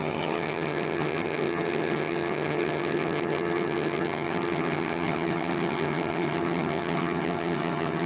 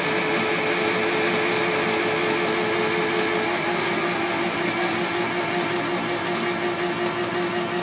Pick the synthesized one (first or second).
first